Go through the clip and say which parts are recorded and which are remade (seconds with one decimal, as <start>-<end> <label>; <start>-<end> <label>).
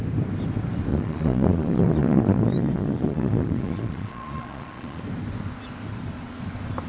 0.0-0.9 recorded; 0.9-5.0 remade; 5.0-6.9 recorded